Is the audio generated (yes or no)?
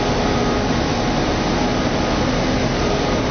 no